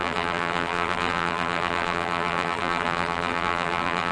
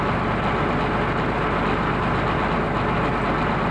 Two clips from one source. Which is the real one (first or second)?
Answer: second